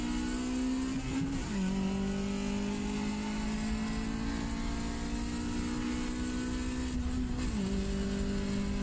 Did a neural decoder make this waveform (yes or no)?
no